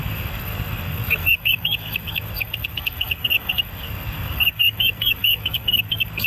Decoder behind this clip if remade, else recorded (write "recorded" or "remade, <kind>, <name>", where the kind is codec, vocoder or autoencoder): remade, codec, SNAC